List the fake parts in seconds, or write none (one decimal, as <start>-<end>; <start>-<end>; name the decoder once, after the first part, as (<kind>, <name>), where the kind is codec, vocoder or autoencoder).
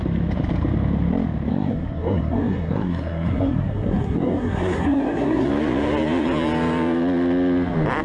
1.5-5.5 (codec, SNAC)